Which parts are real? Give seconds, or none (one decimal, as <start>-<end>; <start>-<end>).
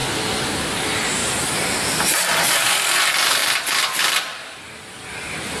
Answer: 0.0-0.5; 1.2-2.3